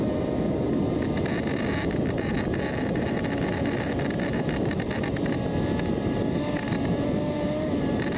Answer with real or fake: real